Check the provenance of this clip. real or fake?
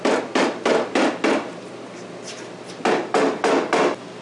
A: real